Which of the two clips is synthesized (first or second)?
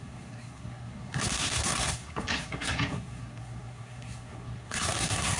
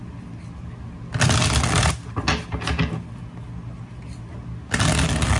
first